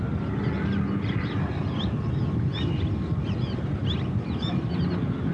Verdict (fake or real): real